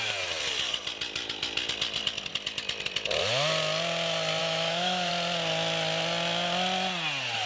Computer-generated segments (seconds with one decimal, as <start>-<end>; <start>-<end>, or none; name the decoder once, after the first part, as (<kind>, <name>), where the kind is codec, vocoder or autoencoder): 4.4-5.1 (autoencoder, DAC-VAE)